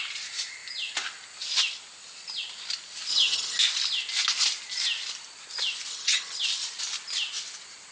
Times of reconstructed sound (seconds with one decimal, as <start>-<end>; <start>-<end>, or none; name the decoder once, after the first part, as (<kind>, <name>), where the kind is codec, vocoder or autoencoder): 3.1-3.6 (vocoder, HiFi-GAN); 5.9-6.4